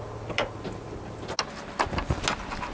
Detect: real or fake real